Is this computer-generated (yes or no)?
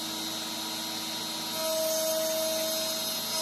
no